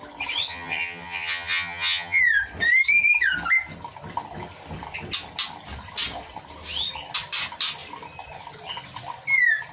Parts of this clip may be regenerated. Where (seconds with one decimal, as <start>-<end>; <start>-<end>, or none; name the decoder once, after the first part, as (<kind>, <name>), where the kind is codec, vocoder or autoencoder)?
0.5-2.2 (vocoder, HiFi-GAN)